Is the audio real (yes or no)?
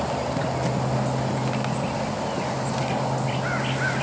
yes